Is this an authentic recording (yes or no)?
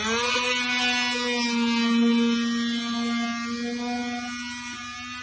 yes